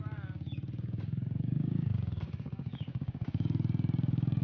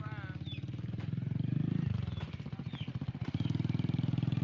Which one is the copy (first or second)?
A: first